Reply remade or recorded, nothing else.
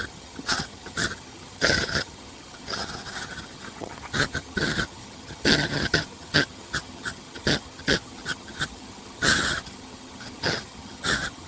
remade